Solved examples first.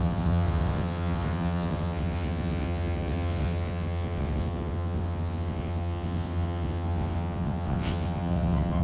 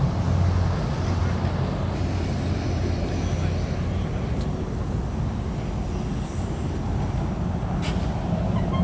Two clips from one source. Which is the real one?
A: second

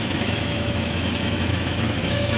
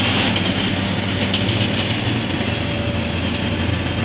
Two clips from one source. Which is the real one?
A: second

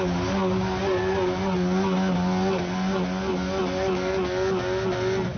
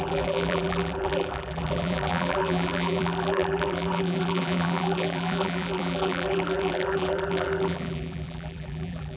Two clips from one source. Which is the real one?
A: first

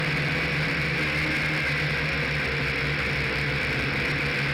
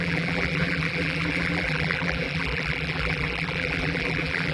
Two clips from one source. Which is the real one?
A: first